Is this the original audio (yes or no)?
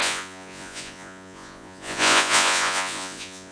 no